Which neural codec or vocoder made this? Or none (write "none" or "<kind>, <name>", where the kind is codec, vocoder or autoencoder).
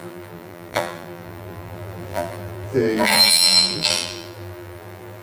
vocoder, BigVGAN v2